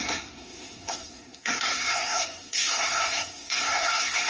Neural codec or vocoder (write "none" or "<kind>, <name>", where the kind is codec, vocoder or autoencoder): codec, SNAC